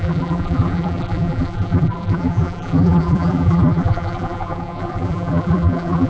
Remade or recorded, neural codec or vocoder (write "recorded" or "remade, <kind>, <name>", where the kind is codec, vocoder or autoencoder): remade, vocoder, BigVGAN v2